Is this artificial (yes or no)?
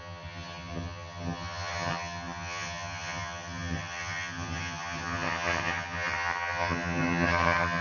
yes